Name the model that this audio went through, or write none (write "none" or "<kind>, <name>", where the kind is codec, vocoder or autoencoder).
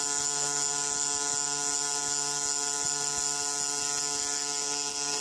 none